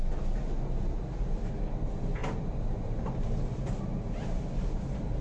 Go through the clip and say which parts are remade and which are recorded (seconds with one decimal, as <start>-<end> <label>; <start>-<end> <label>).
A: 0.0-5.2 recorded